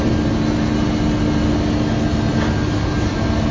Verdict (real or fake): real